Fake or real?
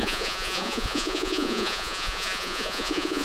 fake